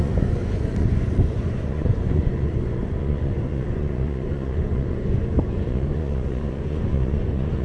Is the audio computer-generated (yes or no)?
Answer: yes